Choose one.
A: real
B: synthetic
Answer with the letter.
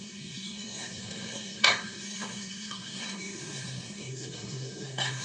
B